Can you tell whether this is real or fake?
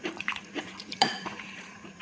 fake